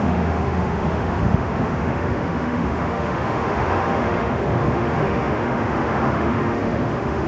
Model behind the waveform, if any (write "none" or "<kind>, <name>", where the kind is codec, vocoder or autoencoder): autoencoder, DAC-VAE